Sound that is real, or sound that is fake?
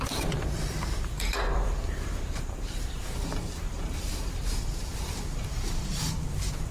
fake